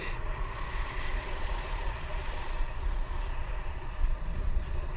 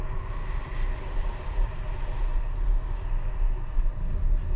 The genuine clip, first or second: second